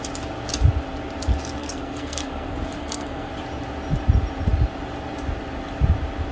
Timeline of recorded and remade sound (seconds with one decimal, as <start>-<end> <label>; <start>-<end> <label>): 0.0-1.6 recorded; 1.6-3.3 remade; 3.3-6.3 recorded